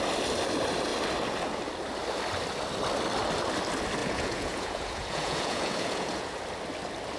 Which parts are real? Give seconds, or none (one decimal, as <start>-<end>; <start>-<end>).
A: 0.0-4.0; 6.4-7.2